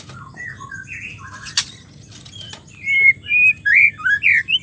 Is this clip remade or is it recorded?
remade